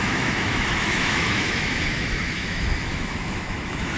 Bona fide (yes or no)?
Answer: no